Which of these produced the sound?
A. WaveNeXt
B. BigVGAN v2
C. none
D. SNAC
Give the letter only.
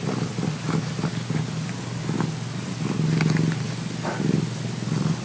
C